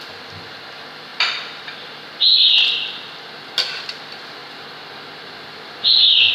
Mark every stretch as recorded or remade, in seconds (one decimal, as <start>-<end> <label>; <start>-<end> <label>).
0.0-6.3 recorded